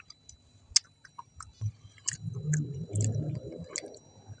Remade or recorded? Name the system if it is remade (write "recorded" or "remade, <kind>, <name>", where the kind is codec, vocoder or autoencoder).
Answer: recorded